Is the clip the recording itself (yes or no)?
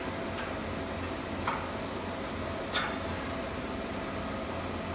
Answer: yes